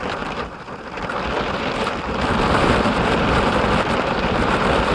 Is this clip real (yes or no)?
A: no